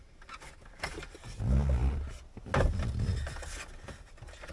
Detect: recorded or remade recorded